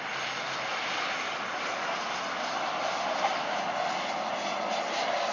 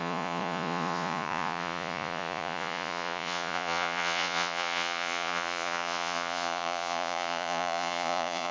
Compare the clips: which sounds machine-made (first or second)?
second